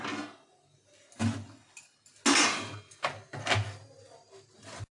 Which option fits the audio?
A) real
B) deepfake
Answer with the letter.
A